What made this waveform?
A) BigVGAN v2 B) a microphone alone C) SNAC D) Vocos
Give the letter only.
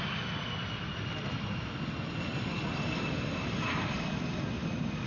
B